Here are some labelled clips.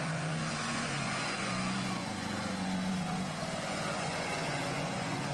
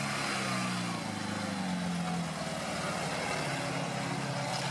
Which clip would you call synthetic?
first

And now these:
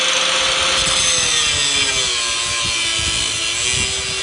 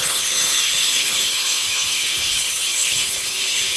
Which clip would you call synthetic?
second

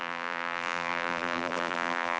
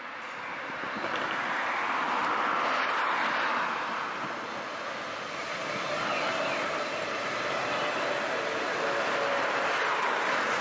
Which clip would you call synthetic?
first